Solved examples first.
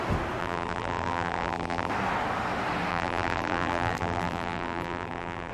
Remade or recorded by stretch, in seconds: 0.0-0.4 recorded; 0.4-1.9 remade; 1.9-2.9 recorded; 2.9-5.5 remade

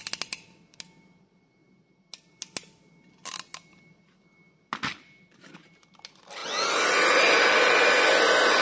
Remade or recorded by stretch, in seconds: 0.0-8.6 recorded